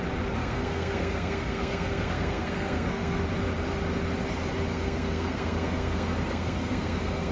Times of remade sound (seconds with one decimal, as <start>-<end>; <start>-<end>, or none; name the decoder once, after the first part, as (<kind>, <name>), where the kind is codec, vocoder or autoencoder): 0.4-3.2 (codec, SNAC); 4.7-7.3